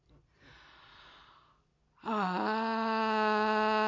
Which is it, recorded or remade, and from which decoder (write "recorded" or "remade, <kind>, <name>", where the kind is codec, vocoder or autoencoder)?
recorded